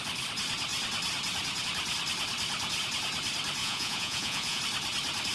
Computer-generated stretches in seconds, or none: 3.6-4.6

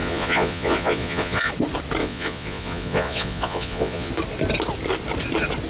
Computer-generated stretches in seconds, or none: 0.0-1.5; 2.0-4.1

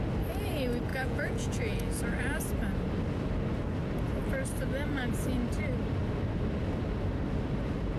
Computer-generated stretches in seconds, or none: 0.9-2.0

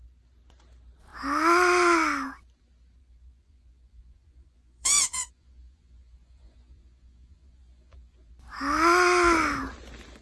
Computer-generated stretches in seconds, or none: 3.0-8.3